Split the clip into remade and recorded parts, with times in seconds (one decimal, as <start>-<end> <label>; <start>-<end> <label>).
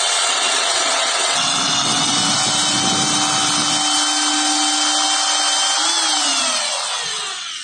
0.0-2.1 remade; 2.1-6.6 recorded; 6.6-7.6 remade